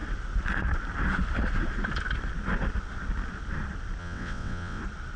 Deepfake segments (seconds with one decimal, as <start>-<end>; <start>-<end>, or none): 4.0-4.8